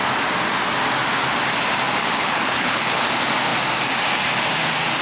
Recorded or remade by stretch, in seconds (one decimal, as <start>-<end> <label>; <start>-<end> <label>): 0.0-2.0 recorded; 2.0-3.0 remade; 3.0-5.0 recorded